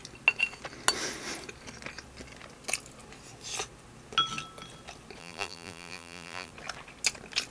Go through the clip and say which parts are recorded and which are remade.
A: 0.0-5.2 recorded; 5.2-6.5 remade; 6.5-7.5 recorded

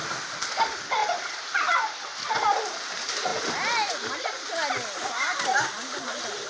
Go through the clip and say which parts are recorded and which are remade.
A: 0.0-0.5 remade; 0.5-1.0 recorded; 1.0-2.3 remade; 2.3-6.5 recorded

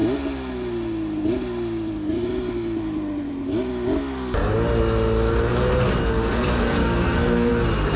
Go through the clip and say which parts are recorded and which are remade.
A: 0.0-6.8 recorded; 6.8-7.5 remade; 7.5-8.0 recorded

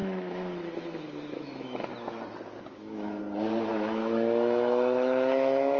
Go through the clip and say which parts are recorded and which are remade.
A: 0.0-1.9 remade; 1.9-2.6 recorded; 2.6-3.2 remade; 3.2-3.7 recorded; 3.7-5.8 remade